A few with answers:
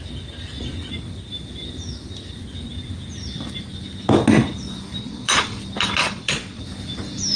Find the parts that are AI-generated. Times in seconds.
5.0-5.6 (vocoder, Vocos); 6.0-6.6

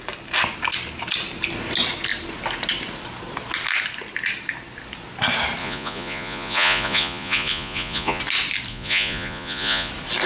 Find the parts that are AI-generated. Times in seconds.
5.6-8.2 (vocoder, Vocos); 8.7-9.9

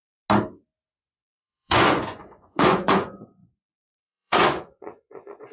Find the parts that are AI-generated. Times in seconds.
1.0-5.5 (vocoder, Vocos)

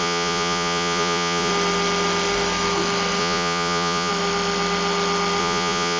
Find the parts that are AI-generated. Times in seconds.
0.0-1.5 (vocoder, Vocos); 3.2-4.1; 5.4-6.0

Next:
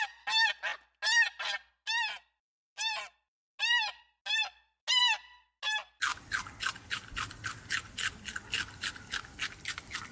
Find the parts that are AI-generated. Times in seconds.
none

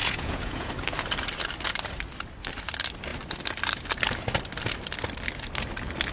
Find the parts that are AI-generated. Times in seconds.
0.0-0.7 (vocoder, Vocos)

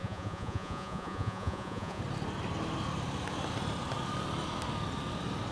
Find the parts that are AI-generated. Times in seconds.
0.0-2.0 (vocoder, Vocos)

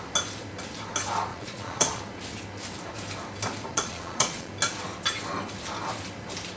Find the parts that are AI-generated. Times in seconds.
1.3-2.0 (vocoder, Vocos); 3.7-4.5